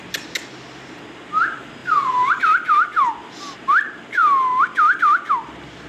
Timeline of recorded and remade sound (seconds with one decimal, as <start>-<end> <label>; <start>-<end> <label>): 0.0-1.8 recorded; 1.8-2.4 remade; 2.4-5.9 recorded